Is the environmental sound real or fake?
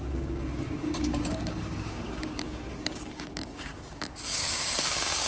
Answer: fake